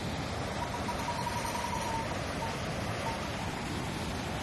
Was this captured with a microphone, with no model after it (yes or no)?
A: yes